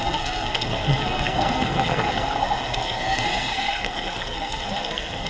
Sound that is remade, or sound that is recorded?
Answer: remade